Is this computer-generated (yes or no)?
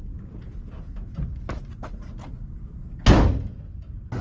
no